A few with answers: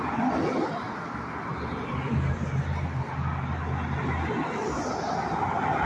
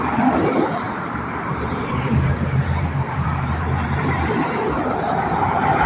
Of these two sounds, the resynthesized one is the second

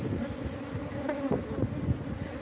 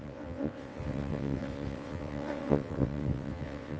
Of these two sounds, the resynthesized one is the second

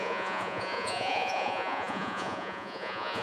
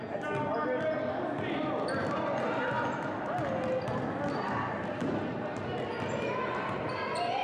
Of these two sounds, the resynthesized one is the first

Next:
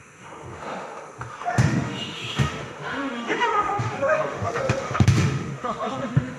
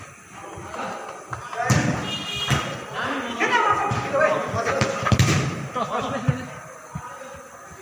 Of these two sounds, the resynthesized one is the first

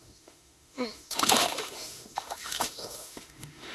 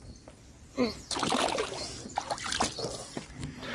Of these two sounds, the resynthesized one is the first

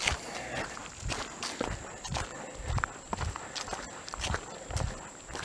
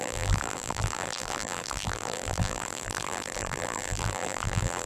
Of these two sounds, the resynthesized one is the second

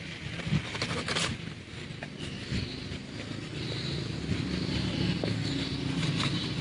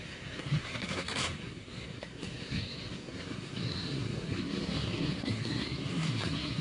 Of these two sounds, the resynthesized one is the second